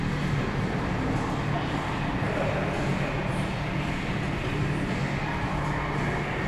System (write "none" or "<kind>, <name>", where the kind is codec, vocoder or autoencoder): none